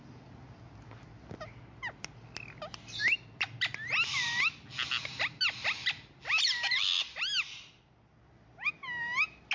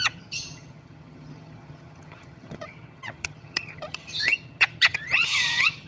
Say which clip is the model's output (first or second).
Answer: second